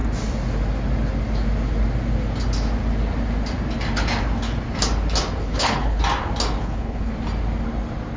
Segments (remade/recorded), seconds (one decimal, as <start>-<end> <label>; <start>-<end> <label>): 0.0-5.4 recorded; 5.4-6.0 remade; 6.0-6.6 recorded; 6.6-7.1 remade; 7.1-8.2 recorded